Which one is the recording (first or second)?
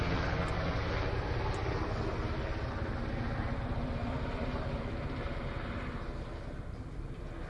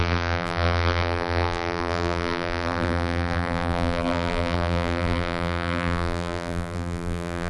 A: first